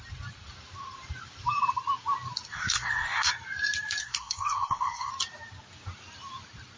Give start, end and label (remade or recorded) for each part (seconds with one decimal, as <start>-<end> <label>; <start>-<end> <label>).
0.0-2.5 recorded; 2.5-3.3 remade; 3.3-4.0 recorded; 4.0-5.1 remade; 5.1-6.8 recorded